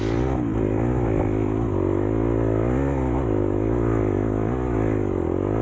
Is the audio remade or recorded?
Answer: recorded